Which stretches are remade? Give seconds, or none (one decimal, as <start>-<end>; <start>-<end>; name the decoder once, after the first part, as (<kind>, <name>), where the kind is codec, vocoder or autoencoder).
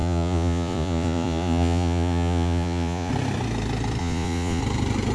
0.0-3.1 (vocoder, Vocos); 4.0-4.6